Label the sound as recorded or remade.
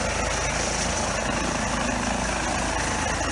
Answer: recorded